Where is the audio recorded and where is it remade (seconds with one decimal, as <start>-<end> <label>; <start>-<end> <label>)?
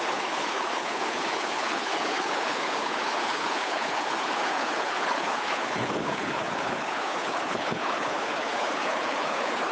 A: 0.0-9.7 remade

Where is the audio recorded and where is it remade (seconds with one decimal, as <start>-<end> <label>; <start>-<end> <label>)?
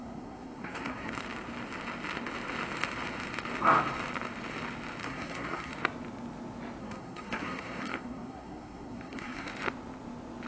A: 0.0-1.1 remade; 1.1-5.0 recorded; 5.0-5.7 remade; 5.7-6.8 recorded; 6.8-9.5 remade; 9.5-10.5 recorded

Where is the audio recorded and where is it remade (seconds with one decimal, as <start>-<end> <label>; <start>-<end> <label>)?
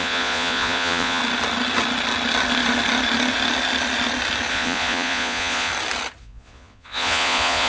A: 0.0-1.2 remade; 1.2-4.5 recorded; 4.5-5.7 remade; 5.7-6.2 recorded; 6.2-7.7 remade